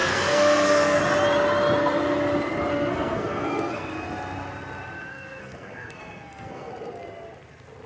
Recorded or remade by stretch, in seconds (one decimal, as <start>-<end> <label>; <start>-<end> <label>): 0.0-1.0 remade; 1.0-2.7 recorded; 2.7-3.9 remade; 3.9-5.1 recorded; 5.1-6.7 remade; 6.7-7.9 recorded